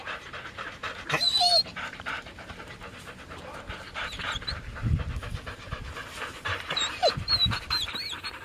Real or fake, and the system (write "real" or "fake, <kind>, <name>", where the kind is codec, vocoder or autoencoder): fake, vocoder, BigVGAN v2